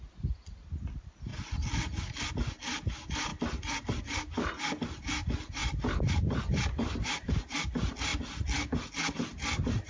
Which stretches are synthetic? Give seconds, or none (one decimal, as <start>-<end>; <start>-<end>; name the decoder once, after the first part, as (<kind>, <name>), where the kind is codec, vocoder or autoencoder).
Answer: 5.6-7.3 (vocoder, BigVGAN v2)